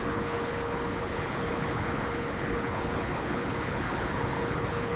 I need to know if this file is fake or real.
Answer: fake